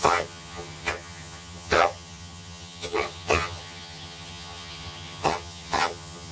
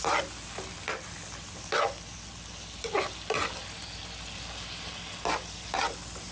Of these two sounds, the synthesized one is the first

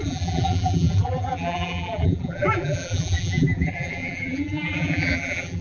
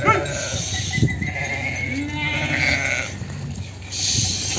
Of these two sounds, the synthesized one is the first